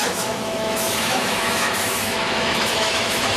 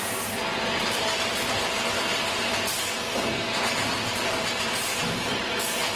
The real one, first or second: second